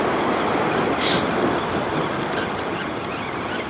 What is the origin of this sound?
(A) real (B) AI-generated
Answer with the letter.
A